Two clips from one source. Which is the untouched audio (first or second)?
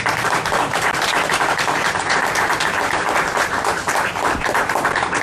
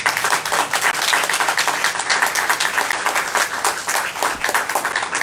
second